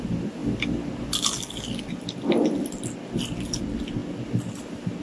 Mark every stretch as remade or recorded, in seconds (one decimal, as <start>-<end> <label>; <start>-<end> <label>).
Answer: 0.0-5.0 recorded